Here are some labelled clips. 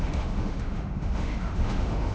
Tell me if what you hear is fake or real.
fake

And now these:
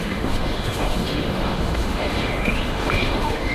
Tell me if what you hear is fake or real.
fake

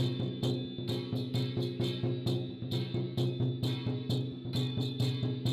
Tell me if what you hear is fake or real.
real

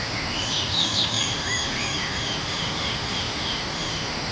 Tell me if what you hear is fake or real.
fake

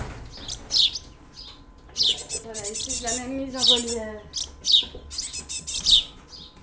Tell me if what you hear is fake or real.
real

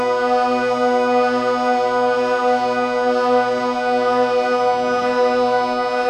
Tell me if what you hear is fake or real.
real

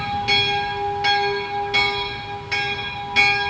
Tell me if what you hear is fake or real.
real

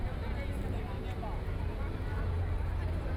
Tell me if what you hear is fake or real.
real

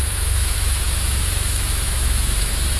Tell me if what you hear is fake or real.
fake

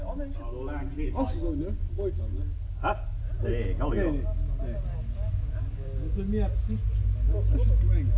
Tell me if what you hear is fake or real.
real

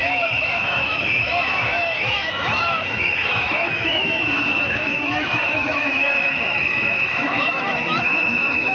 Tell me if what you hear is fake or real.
fake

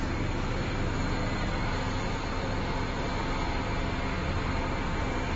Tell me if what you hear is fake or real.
real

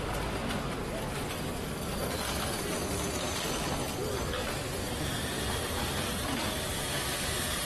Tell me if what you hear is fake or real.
real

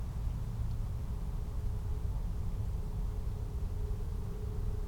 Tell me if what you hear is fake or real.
real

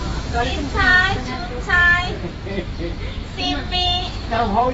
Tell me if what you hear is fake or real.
fake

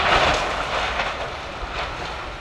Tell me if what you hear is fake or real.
real